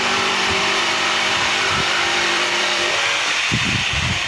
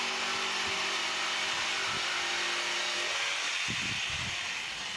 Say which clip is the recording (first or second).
second